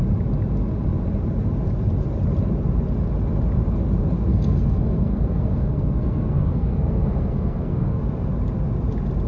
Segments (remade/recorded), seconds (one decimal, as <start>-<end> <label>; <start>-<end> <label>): 0.0-4.3 recorded; 4.3-8.0 remade; 8.0-9.3 recorded

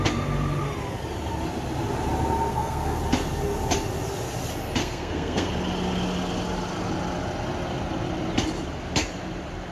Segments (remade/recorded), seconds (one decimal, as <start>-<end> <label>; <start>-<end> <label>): 0.0-2.5 recorded; 2.5-3.0 remade; 3.0-4.8 recorded; 4.8-5.5 remade; 5.5-9.7 recorded

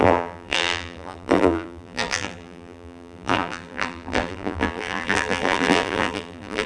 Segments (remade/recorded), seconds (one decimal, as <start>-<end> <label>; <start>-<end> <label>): 0.0-6.7 remade

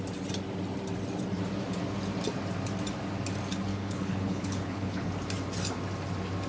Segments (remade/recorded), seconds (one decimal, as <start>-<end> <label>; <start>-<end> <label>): 0.0-3.7 recorded; 3.7-5.1 remade; 5.1-6.5 recorded